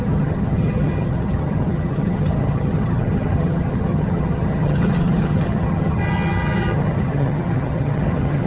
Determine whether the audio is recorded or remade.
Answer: remade